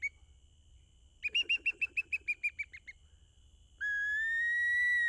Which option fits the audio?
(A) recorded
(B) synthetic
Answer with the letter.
A